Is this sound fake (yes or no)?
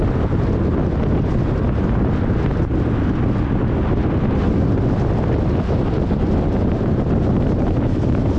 no